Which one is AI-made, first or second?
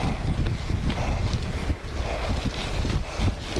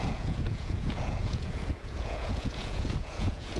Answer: second